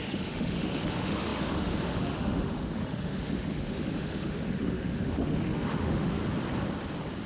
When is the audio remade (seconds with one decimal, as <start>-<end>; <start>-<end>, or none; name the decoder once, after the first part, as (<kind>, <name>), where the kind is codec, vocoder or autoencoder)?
0.0-6.2 (autoencoder, DAC-VAE)